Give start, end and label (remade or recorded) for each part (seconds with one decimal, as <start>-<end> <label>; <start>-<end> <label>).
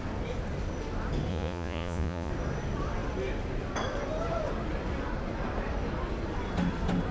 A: 0.0-1.3 recorded; 1.3-2.3 remade; 2.3-7.1 recorded